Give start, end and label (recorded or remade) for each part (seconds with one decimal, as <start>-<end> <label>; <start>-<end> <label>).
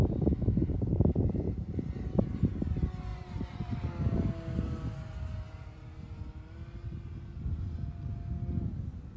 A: 0.0-0.6 recorded; 0.6-2.5 remade; 2.5-3.1 recorded; 3.1-3.9 remade; 3.9-5.5 recorded; 5.5-6.3 remade; 6.3-9.2 recorded